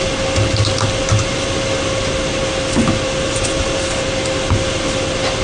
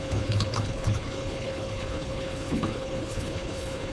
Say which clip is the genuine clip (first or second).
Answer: first